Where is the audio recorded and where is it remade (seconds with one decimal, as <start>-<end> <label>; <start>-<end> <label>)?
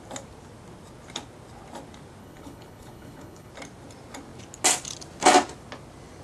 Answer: 0.0-2.2 recorded; 2.2-3.5 remade; 3.5-6.2 recorded